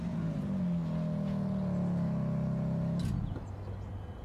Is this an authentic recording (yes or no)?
yes